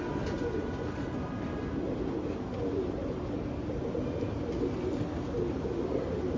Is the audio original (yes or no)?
yes